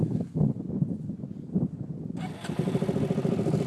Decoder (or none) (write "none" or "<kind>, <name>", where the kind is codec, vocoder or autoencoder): none